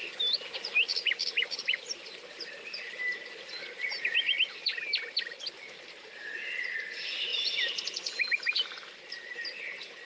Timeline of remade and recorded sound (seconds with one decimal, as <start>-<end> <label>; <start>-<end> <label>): 0.0-10.0 recorded